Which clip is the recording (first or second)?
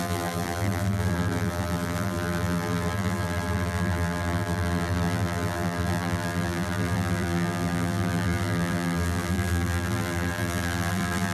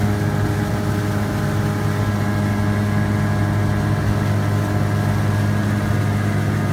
second